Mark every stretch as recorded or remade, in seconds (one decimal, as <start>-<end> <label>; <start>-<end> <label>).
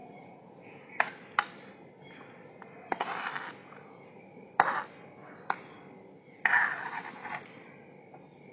0.0-1.1 remade; 1.1-3.6 recorded; 3.6-4.2 remade; 4.2-8.5 recorded